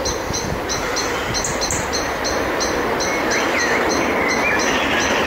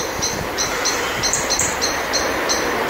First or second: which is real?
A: first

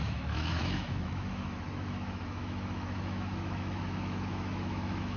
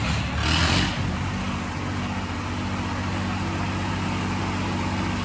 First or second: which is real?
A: second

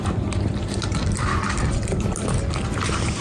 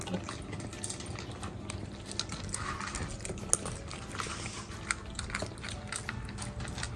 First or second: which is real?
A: second